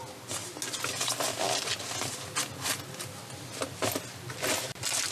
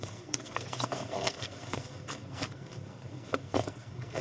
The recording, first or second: first